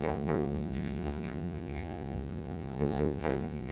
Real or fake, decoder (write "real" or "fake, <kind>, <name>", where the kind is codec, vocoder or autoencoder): fake, vocoder, Vocos